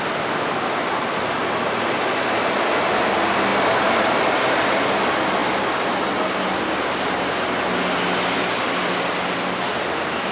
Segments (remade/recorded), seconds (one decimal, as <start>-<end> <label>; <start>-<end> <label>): 0.0-10.3 recorded